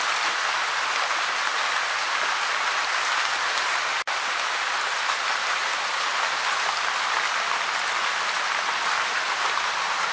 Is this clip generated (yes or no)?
no